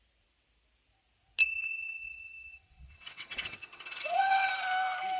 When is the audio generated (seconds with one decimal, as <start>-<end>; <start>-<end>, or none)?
1.4-4.5